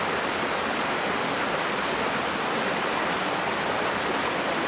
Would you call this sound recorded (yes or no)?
yes